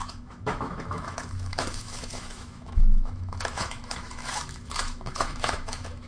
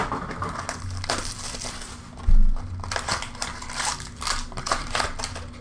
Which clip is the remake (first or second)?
first